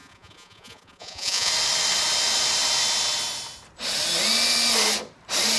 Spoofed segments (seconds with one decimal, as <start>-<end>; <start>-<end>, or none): 0.0-1.5

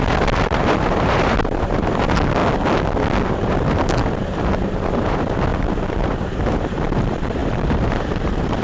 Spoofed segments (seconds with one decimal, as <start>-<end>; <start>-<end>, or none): 0.0-2.4; 3.3-8.6

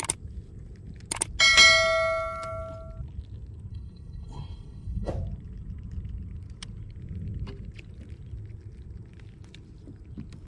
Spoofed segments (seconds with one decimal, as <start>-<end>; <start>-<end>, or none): 3.7-5.1

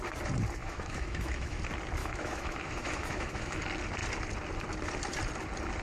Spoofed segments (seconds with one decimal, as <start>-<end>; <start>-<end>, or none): 0.6-1.6; 2.0-3.6

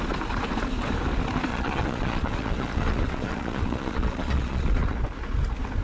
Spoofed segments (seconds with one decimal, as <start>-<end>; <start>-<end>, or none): 1.5-5.0

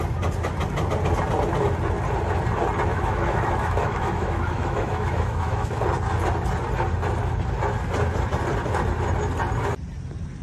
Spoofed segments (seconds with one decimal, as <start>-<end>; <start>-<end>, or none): 2.9-5.8